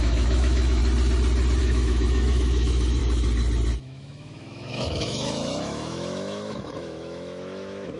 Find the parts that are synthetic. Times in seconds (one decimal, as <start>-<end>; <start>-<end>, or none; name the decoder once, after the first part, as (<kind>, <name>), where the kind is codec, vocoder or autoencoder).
0.0-0.8 (autoencoder, DAC-VAE); 1.6-3.0; 3.8-8.0